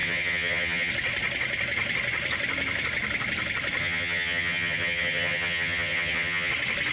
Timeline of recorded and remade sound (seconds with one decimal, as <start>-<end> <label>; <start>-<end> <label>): 0.0-0.9 remade; 0.9-3.8 recorded; 3.8-6.5 remade; 6.5-6.9 recorded